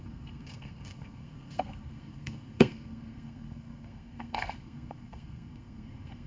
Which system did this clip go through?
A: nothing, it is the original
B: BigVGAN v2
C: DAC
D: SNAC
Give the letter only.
D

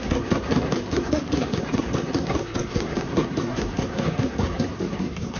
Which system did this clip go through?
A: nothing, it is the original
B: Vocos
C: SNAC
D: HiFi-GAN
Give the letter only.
C